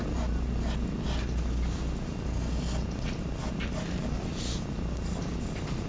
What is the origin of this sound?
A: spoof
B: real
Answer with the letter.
B